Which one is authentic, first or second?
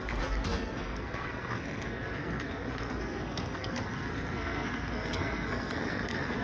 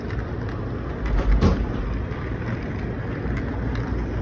second